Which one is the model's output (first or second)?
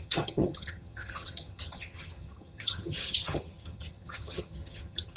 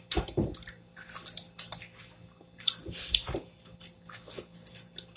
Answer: first